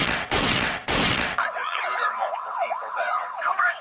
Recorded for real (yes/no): no